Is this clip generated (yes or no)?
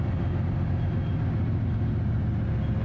no